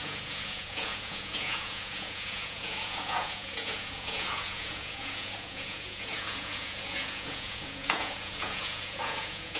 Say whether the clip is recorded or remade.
remade